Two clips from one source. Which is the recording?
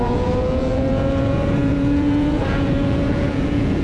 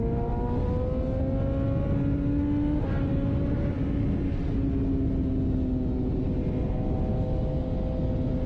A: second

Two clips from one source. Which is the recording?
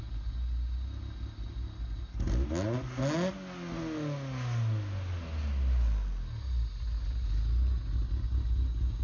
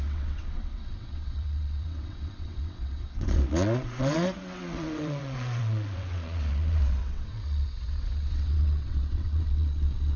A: first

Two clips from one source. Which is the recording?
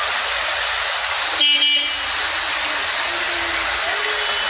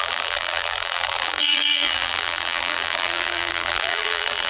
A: first